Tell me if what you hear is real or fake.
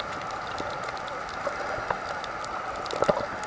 real